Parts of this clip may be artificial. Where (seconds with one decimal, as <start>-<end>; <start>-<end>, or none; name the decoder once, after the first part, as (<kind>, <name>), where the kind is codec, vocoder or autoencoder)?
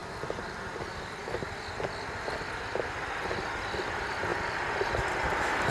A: none